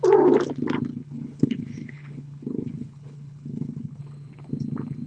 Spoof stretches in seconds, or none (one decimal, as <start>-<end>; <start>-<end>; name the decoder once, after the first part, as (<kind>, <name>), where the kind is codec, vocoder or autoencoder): 0.9-4.0 (codec, HILCodec)